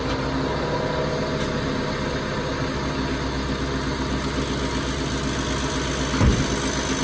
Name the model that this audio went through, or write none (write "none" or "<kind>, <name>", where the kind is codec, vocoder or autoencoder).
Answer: none